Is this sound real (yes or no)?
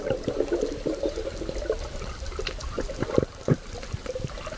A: yes